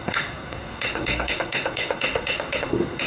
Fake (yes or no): yes